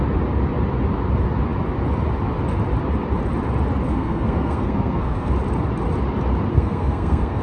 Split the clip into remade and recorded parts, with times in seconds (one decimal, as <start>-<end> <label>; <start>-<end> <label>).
0.0-3.9 recorded; 3.9-5.3 remade; 5.3-6.5 recorded; 6.5-7.4 remade